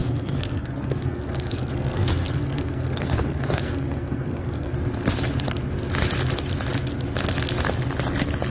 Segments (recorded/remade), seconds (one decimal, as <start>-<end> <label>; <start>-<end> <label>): 0.0-4.7 remade; 4.7-8.5 recorded